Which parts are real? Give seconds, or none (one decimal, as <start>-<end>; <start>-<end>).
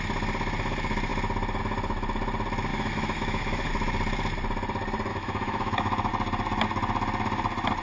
0.0-2.7; 3.7-5.1; 6.1-7.8